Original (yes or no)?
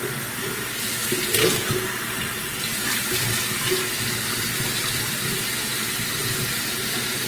yes